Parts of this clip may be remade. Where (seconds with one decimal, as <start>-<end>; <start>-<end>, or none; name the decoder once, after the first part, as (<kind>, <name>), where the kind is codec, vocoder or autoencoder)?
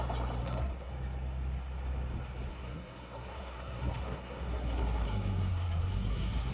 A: 0.4-0.9 (codec, SNAC); 2.5-6.5